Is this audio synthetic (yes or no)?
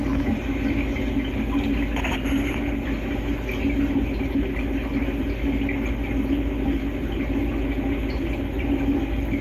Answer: no